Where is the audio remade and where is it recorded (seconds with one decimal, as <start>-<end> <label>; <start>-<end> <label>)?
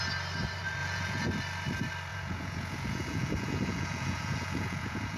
0.0-0.8 recorded; 0.8-1.3 remade; 1.3-2.1 recorded; 2.1-5.2 remade